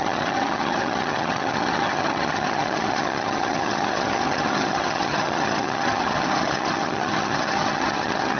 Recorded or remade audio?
remade